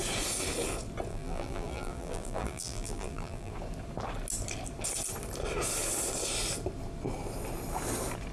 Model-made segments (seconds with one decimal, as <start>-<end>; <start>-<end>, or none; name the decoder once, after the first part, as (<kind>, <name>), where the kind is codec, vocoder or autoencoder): 1.1-3.5 (vocoder, BigVGAN v2)